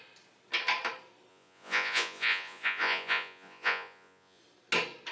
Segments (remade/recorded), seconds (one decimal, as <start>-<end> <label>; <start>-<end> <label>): 0.0-1.3 recorded; 1.3-4.4 remade; 4.4-5.1 recorded